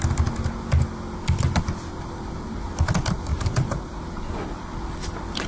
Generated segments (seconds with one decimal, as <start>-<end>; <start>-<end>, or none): 3.3-3.9